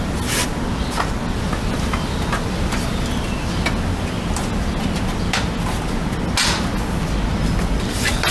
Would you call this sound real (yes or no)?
yes